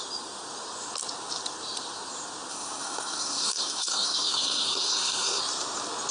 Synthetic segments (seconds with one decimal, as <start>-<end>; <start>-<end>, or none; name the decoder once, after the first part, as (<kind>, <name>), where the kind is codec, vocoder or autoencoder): 2.5-5.4 (codec, SNAC)